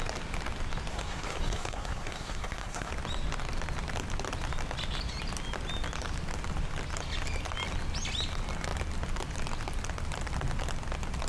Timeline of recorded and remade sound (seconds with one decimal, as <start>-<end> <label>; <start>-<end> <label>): 0.0-0.9 recorded; 0.9-2.9 remade; 2.9-11.3 recorded